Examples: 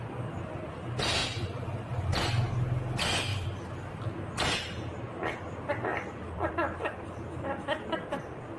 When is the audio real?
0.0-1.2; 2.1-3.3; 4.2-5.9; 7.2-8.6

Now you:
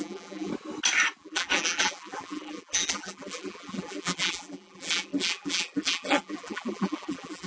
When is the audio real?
0.5-1.2

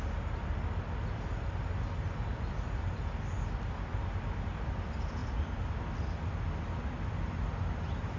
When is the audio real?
0.0-5.2; 5.7-8.2

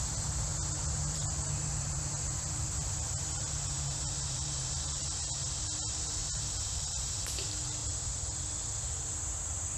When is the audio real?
0.0-0.5; 5.6-6.2; 6.9-7.8; 8.5-9.8

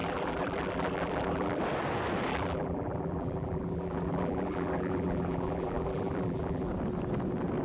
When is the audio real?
1.6-2.3; 6.7-7.6

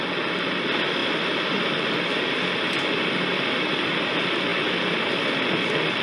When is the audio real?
0.0-1.0; 2.6-3.3; 3.9-6.0